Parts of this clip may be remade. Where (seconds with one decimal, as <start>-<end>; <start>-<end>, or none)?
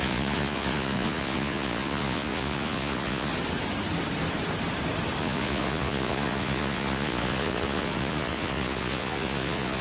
0.0-3.3; 5.2-9.8